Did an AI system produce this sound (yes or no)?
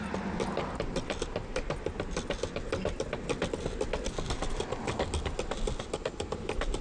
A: yes